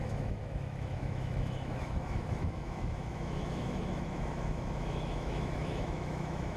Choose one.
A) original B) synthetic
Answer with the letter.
B